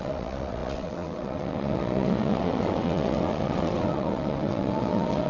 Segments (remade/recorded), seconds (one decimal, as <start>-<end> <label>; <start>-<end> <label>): 0.0-5.3 remade